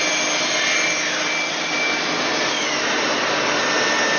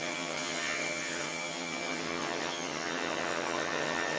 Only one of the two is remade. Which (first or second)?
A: second